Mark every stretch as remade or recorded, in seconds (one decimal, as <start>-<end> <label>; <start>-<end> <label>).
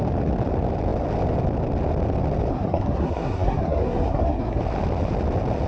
0.0-2.5 recorded; 2.5-4.6 remade; 4.6-5.7 recorded